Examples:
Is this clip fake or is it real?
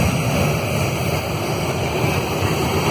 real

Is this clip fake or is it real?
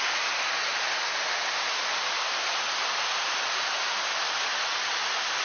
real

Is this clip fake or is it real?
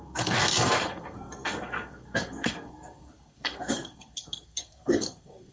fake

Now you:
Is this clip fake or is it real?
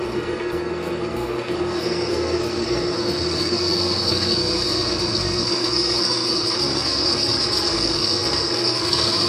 fake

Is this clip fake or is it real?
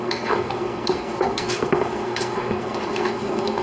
fake